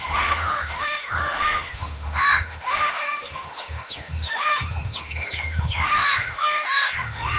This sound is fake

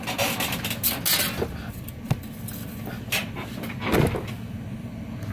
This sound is real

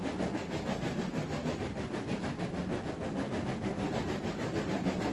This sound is real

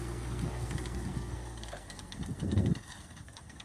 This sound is fake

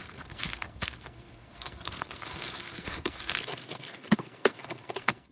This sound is fake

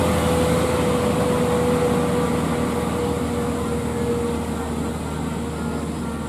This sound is real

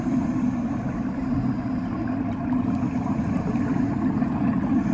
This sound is real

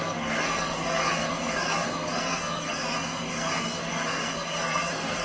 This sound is fake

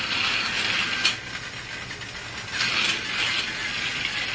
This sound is real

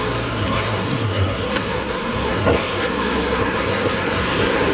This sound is fake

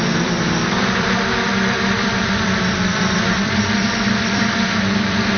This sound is fake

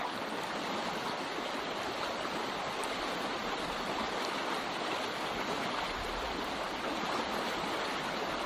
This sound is real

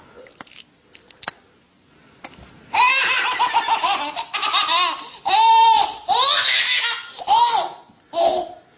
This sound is real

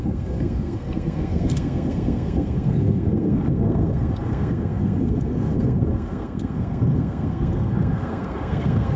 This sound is fake